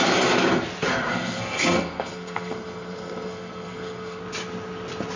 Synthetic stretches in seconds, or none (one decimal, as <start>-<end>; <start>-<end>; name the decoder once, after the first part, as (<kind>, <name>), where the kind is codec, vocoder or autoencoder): 1.1-4.2 (codec, SNAC)